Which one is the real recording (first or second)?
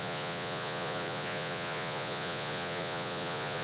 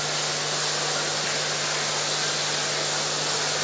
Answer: second